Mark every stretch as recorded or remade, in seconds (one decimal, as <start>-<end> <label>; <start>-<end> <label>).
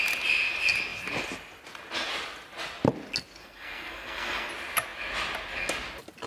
0.0-3.4 recorded; 3.4-4.5 remade; 4.5-6.3 recorded